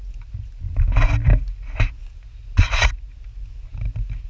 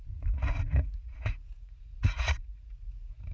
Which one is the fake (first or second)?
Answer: second